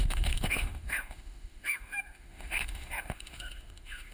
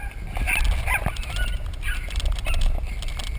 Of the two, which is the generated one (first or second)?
first